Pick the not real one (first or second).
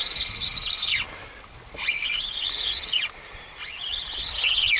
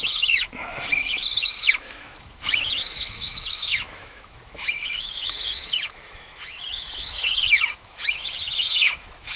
second